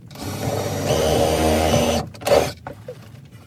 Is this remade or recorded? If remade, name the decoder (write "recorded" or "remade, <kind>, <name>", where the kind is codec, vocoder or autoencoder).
remade, vocoder, BigVGAN v2